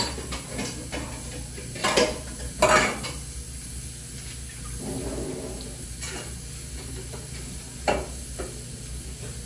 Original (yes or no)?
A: yes